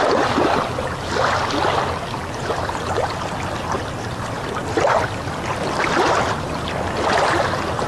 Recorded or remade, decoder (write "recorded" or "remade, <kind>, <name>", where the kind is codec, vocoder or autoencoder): recorded